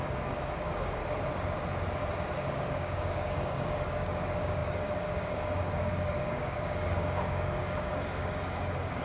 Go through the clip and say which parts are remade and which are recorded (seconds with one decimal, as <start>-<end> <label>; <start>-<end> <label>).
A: 0.0-1.0 remade; 1.0-2.5 recorded; 2.5-9.0 remade